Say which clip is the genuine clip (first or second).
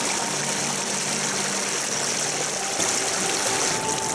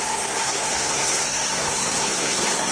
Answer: first